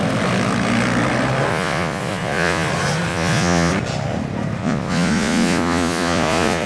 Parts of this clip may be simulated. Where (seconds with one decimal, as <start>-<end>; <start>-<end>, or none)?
1.5-2.7; 3.1-3.7; 4.6-6.7